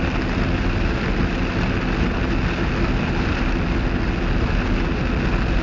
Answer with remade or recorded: recorded